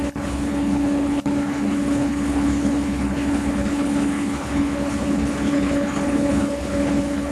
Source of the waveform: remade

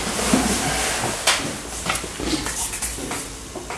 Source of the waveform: recorded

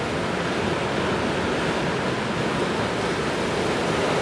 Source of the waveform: recorded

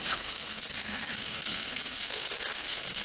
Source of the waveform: remade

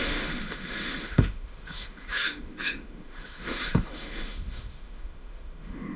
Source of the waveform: remade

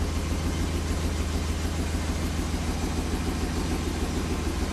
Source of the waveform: recorded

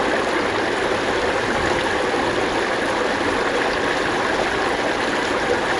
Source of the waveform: recorded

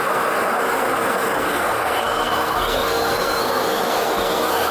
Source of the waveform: remade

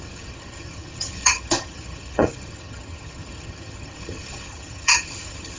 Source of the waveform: remade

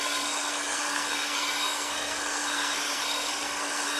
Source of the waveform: remade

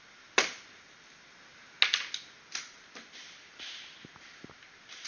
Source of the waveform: recorded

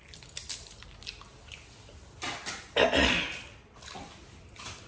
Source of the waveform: recorded